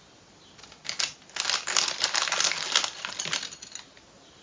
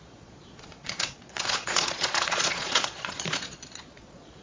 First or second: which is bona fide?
first